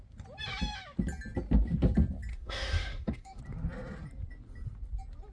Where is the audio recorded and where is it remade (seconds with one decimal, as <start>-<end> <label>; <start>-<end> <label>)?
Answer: 0.0-2.3 recorded; 2.3-3.4 remade; 3.4-5.3 recorded